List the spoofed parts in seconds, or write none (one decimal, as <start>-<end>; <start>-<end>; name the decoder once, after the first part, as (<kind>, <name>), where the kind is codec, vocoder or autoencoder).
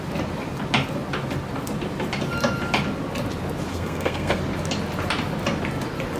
3.7-4.4 (codec, SNAC)